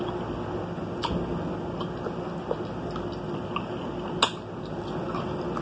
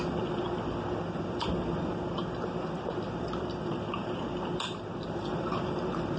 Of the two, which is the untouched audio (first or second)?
first